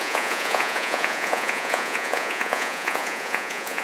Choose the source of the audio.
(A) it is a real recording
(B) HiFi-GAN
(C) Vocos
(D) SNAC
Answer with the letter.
C